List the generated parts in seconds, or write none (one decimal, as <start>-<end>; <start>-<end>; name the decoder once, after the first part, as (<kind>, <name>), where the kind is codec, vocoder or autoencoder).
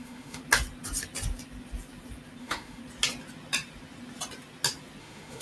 0.0-0.4 (autoencoder, DAC-VAE); 2.4-2.8; 5.0-5.4